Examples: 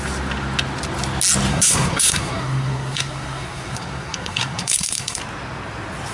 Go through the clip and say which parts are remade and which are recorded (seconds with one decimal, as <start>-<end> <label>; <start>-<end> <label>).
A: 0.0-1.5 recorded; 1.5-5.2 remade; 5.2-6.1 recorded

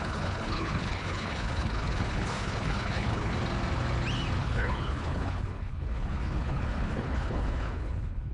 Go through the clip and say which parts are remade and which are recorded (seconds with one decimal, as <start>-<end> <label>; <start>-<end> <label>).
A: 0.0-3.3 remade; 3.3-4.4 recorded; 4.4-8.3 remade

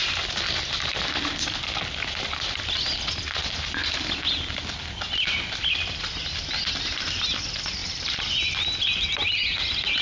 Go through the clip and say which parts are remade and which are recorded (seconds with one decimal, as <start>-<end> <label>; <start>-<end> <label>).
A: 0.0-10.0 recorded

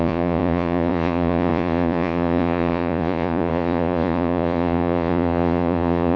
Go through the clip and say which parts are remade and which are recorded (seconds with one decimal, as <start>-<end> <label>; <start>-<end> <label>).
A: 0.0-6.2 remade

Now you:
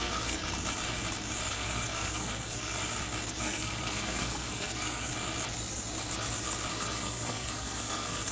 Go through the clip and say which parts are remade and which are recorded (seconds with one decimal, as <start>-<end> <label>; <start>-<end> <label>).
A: 0.0-0.4 remade; 0.4-1.5 recorded; 1.5-2.8 remade; 2.8-3.4 recorded; 3.4-5.1 remade; 5.1-6.7 recorded; 6.7-8.3 remade

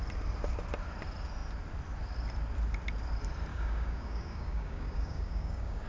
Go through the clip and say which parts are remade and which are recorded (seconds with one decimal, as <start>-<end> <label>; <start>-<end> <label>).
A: 0.0-3.5 recorded; 3.5-5.9 remade

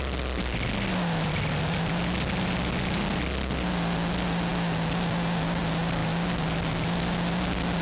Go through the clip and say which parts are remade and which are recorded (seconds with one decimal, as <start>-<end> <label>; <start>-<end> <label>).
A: 0.0-7.8 recorded